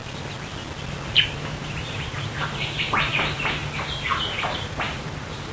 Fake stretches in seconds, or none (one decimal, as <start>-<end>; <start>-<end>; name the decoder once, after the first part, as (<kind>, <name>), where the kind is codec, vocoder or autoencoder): 1.1-5.5 (vocoder, BigVGAN v2)